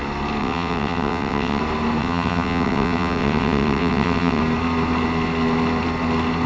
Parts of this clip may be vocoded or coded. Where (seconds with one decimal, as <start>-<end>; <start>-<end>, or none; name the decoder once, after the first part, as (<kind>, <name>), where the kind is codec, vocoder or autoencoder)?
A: 0.4-1.6 (vocoder, WaveNeXt); 2.0-4.4